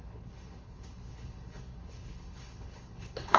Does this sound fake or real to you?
fake